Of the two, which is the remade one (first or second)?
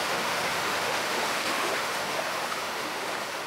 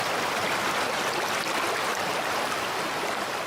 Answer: first